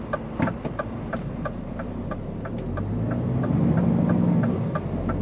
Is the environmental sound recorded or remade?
recorded